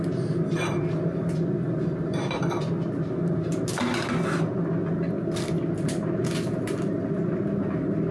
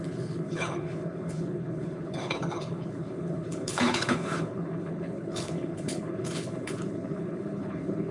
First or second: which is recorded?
first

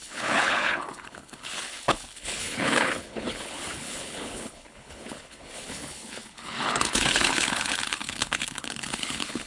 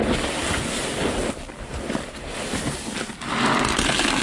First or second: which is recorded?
second